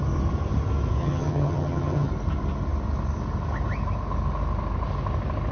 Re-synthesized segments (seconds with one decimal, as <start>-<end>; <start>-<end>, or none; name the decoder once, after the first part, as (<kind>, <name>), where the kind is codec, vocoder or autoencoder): 1.0-2.1 (vocoder, HiFi-GAN)